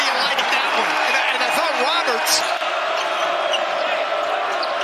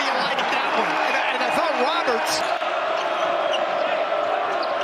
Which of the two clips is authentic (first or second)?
first